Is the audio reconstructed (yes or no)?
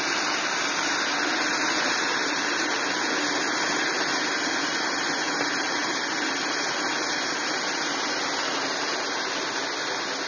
no